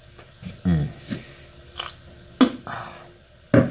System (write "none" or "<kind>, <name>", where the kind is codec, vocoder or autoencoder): none